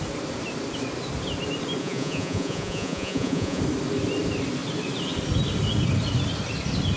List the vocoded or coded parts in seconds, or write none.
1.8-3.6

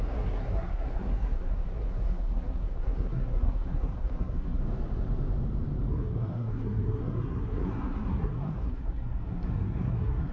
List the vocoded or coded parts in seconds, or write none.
0.0-4.6; 5.9-10.3

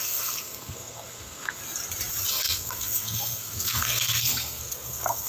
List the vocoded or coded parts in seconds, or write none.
0.0-1.6; 2.3-5.3